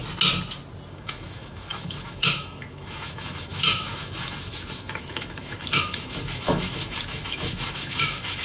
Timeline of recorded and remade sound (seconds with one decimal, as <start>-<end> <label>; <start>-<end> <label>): 0.0-0.9 recorded; 0.9-8.4 remade